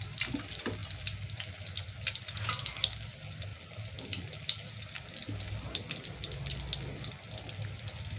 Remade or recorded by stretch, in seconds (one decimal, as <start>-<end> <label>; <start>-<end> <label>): 0.0-8.2 recorded